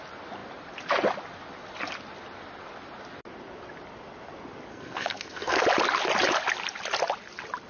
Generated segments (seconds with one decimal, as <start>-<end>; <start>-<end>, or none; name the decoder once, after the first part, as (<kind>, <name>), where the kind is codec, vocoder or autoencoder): 4.7-5.6 (codec, SNAC)